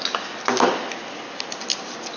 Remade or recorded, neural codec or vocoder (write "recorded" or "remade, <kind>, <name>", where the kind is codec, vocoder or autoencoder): recorded